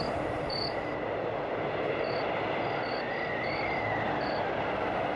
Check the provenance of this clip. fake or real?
real